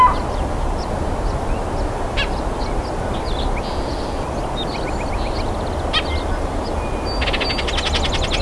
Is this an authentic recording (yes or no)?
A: yes